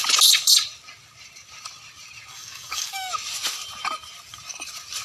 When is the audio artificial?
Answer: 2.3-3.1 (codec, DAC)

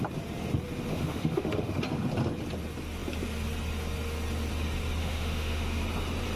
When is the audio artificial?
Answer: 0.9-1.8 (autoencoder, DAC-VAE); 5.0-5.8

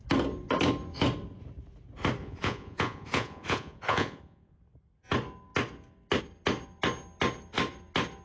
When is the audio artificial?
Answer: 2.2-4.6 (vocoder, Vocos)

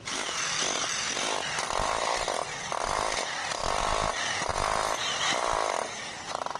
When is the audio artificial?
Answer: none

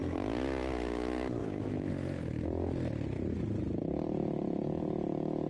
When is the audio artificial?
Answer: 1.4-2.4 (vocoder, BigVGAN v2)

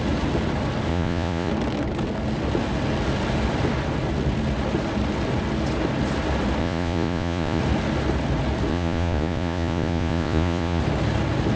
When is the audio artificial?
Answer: 0.9-1.5 (vocoder, Vocos); 6.6-7.6; 8.7-10.8